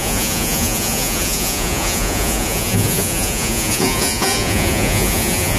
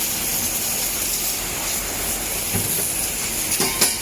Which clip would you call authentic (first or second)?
second